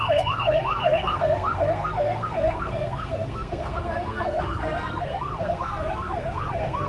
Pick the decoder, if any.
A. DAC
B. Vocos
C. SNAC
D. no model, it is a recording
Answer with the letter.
C